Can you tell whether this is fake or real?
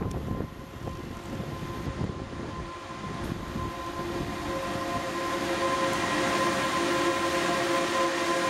real